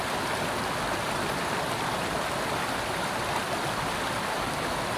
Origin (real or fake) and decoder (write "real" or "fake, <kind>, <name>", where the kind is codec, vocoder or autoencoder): real